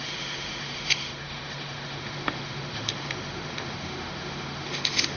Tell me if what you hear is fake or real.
fake